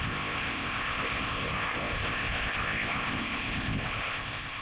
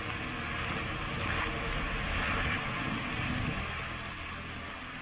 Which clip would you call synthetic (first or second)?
first